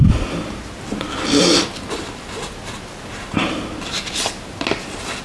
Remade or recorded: recorded